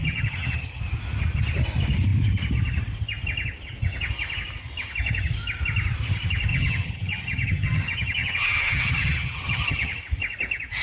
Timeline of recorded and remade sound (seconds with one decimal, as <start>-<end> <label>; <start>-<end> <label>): 0.0-0.8 remade; 0.8-6.5 recorded; 6.5-10.0 remade; 10.0-10.8 recorded